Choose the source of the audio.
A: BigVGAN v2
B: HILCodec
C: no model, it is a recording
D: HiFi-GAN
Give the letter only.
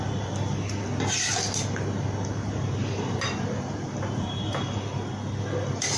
C